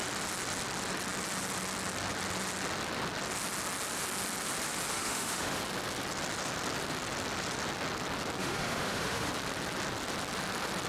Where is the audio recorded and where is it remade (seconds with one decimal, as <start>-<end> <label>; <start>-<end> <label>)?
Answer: 0.0-4.9 recorded; 4.9-5.6 remade; 5.6-8.4 recorded; 8.4-9.3 remade; 9.3-10.9 recorded